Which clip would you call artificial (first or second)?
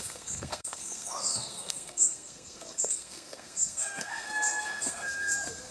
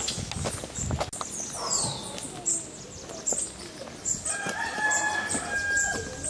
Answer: first